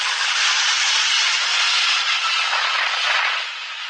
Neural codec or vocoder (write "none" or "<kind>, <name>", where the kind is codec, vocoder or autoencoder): vocoder, Vocos